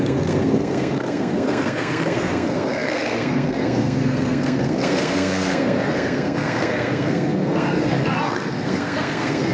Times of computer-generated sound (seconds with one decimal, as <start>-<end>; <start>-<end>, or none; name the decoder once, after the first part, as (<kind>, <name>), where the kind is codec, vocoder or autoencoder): 0.0-9.5 (codec, SNAC)